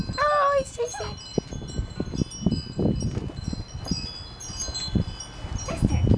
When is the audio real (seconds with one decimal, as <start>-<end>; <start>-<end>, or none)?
0.0-6.2